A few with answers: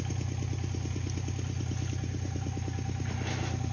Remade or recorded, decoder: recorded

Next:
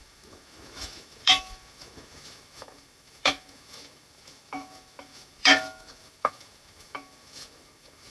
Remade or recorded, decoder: remade, autoencoder, DAC-VAE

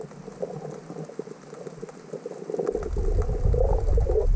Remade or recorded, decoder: recorded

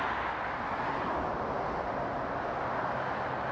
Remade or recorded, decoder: recorded